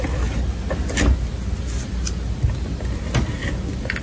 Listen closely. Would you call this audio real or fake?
real